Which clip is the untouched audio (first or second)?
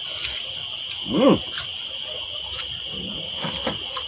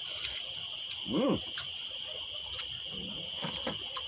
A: first